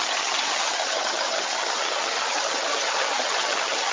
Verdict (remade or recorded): remade